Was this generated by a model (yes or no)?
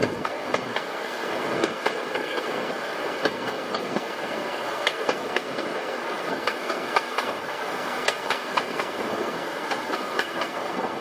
yes